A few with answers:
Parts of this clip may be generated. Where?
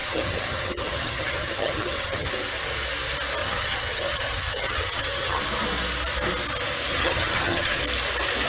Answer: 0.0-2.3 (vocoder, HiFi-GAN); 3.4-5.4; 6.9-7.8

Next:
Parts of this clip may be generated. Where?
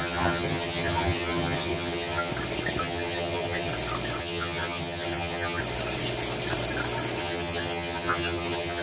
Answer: 0.0-2.3 (vocoder, HiFi-GAN); 2.8-3.7; 4.2-5.6; 7.2-8.8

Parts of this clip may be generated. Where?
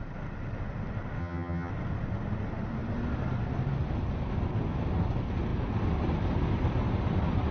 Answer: 1.2-1.7 (vocoder, HiFi-GAN)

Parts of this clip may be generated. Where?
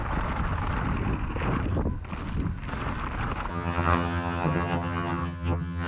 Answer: 3.5-5.9 (vocoder, HiFi-GAN)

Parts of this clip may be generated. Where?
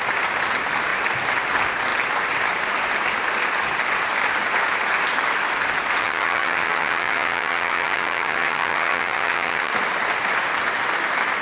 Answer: 6.0-9.7 (vocoder, HiFi-GAN)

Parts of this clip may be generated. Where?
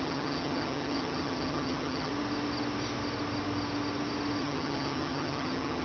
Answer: 0.0-2.1 (vocoder, HiFi-GAN); 4.4-5.8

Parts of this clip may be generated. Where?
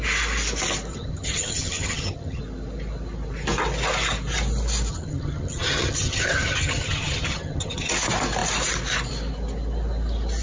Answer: 0.9-2.4 (vocoder, HiFi-GAN); 4.9-7.9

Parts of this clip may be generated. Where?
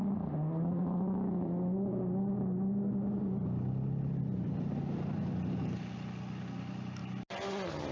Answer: none